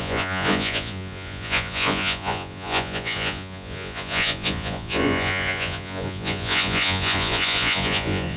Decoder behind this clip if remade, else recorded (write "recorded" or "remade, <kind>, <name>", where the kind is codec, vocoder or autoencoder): remade, vocoder, Vocos